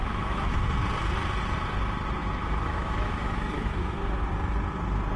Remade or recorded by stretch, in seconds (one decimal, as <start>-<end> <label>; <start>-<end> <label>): 0.0-0.5 remade; 0.5-2.2 recorded; 2.2-4.2 remade; 4.2-5.2 recorded